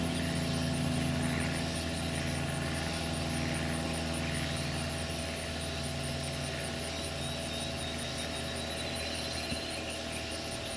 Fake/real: real